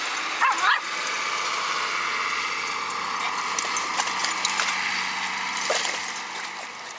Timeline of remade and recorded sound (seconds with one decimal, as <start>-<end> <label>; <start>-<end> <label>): 0.0-7.0 recorded